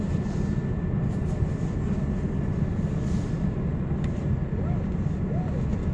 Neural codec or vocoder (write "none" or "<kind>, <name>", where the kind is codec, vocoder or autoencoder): none